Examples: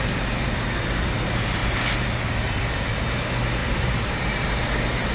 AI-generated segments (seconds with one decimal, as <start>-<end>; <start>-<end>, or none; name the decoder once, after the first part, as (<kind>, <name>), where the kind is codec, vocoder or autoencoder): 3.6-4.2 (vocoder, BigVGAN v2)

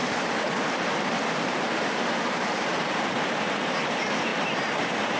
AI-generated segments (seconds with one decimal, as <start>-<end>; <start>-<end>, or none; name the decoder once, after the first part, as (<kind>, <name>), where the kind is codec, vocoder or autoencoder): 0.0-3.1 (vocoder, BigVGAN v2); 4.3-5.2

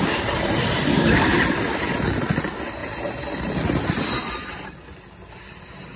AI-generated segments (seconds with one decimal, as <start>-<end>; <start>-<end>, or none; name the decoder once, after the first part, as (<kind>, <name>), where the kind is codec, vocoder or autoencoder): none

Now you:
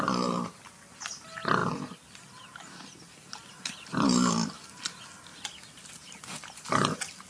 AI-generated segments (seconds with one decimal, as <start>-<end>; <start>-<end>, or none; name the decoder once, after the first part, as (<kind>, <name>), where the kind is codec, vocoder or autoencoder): none

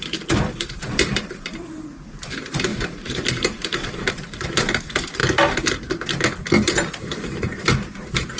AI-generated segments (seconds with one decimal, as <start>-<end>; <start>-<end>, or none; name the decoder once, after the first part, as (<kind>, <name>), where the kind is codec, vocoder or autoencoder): 0.0-5.2 (vocoder, BigVGAN v2); 7.0-8.4